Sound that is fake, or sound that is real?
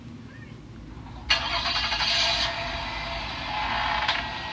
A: real